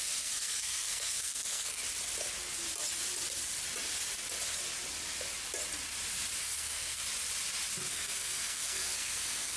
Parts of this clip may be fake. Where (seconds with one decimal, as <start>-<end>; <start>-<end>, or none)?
0.0-1.8; 6.4-7.0; 7.9-9.6